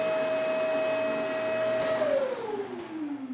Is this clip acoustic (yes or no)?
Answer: yes